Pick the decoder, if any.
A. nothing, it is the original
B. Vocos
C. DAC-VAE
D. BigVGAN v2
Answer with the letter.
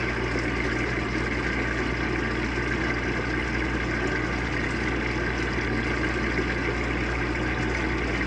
A